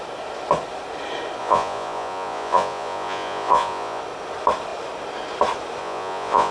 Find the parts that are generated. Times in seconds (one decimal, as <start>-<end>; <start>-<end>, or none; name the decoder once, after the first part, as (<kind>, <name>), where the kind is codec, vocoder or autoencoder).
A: 1.4-4.0 (vocoder, Vocos); 5.8-6.5